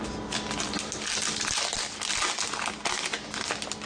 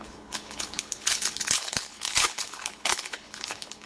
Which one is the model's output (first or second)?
second